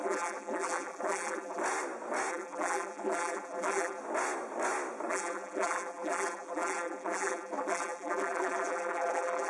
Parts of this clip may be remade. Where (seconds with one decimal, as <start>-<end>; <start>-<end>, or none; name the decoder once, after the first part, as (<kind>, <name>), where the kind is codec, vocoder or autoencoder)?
0.0-1.6 (vocoder, BigVGAN v2); 2.3-4.0; 5.1-9.5